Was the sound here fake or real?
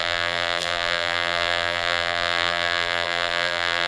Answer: fake